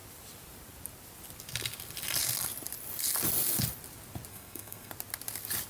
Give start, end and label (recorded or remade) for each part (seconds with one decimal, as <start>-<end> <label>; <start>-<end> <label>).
0.0-4.3 recorded; 4.3-4.9 remade; 4.9-5.7 recorded